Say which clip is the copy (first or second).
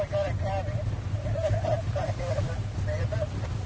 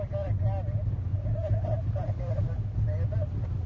first